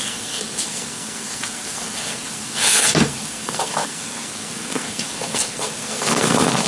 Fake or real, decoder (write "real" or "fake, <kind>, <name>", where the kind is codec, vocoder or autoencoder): fake, codec, SNAC